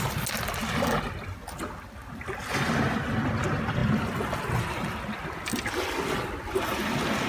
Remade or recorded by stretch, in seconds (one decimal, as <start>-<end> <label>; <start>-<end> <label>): 0.0-7.3 recorded